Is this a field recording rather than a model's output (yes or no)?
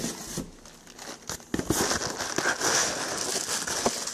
yes